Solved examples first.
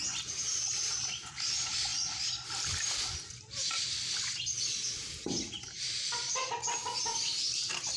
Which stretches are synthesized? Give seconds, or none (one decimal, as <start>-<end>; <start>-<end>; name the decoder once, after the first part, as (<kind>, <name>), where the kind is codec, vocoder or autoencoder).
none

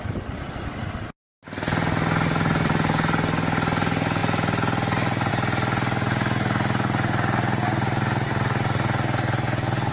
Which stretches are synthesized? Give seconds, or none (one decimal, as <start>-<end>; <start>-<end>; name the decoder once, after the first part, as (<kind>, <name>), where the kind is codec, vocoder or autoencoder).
none

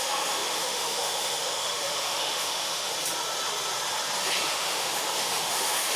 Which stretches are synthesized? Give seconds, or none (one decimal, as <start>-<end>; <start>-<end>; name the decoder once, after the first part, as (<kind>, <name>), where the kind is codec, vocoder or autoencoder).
0.0-2.9 (autoencoder, DAC-VAE); 4.5-6.0

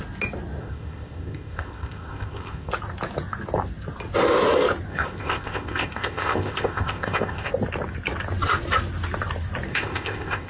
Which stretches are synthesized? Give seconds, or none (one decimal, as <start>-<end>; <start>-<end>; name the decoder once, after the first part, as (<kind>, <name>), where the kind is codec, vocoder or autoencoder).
0.6-2.7 (codec, ZipCodec); 4.9-7.5; 9.7-10.5